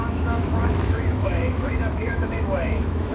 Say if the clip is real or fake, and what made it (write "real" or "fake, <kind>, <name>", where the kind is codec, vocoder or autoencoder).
fake, autoencoder, DAC-VAE